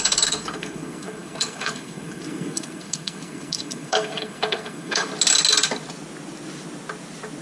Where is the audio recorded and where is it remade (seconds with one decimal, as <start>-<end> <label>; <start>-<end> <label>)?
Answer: 0.0-5.1 remade; 5.1-7.4 recorded